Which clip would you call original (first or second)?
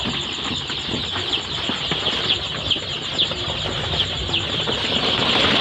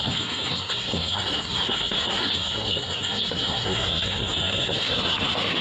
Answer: first